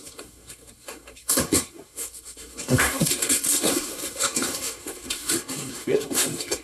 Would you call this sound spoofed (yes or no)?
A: yes